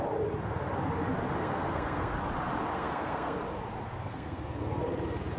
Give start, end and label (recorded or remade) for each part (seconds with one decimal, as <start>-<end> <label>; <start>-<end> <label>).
0.0-1.4 recorded; 1.4-2.1 remade; 2.1-2.7 recorded; 2.7-3.4 remade; 3.4-3.9 recorded; 3.9-4.8 remade; 4.8-5.4 recorded